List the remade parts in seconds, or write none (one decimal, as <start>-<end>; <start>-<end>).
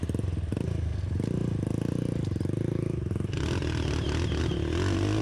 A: none